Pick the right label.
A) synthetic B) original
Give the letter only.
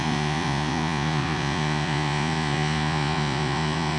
A